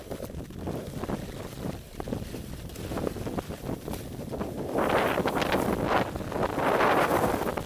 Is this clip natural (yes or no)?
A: yes